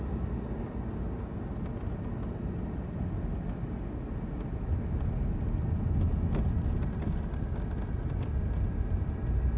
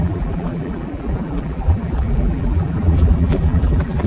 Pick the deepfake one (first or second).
second